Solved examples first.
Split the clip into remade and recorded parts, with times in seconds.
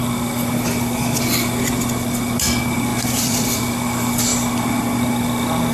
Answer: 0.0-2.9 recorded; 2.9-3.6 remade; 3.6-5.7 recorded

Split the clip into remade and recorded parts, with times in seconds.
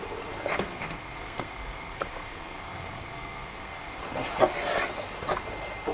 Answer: 0.0-0.5 recorded; 0.5-4.0 remade; 4.0-5.9 recorded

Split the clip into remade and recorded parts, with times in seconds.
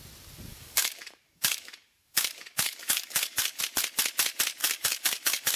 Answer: 0.0-0.5 recorded; 0.5-3.6 remade; 3.6-4.6 recorded; 4.6-5.6 remade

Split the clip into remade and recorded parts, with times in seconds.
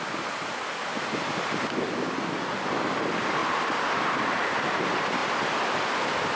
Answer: 0.0-6.4 recorded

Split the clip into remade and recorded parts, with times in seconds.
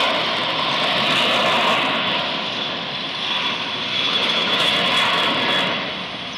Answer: 0.0-3.9 recorded; 3.9-4.7 remade; 4.7-6.4 recorded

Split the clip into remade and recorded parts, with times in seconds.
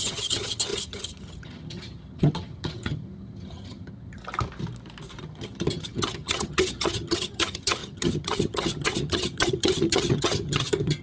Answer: 0.0-4.2 remade; 4.2-5.2 recorded; 5.2-11.0 remade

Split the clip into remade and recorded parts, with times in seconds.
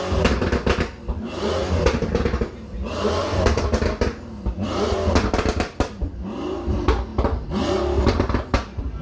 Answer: 0.0-9.0 recorded